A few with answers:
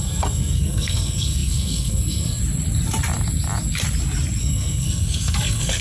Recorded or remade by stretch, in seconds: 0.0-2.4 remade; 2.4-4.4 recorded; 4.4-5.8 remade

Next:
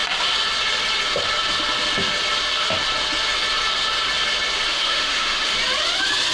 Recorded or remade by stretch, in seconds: 0.0-4.7 recorded; 4.7-5.5 remade; 5.5-6.3 recorded

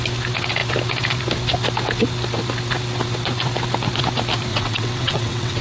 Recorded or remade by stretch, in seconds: 0.0-4.5 recorded; 4.5-5.6 remade

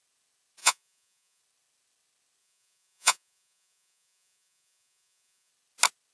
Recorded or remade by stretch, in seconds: 0.0-0.6 recorded; 0.6-1.4 remade; 1.4-2.4 recorded; 2.4-5.5 remade; 5.5-6.1 recorded